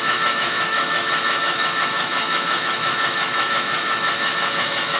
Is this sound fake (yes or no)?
yes